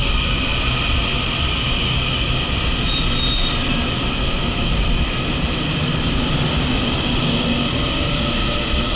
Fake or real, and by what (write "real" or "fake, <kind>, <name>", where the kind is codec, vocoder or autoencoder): real